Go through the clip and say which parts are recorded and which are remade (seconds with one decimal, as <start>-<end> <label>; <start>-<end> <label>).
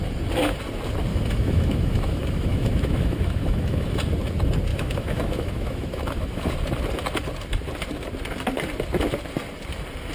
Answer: 0.0-1.1 recorded; 1.1-4.0 remade; 4.0-4.7 recorded; 4.7-6.5 remade; 6.5-10.1 recorded